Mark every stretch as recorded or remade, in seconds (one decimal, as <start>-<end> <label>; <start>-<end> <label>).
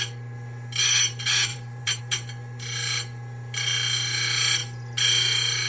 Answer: 0.0-1.5 recorded; 1.5-2.0 remade; 2.0-5.7 recorded